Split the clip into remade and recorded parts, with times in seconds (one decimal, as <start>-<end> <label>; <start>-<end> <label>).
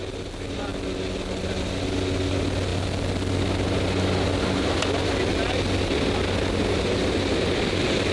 0.0-8.1 recorded